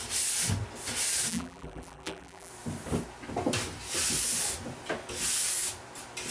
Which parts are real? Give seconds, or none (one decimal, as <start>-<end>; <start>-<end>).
0.0-1.3; 2.5-6.3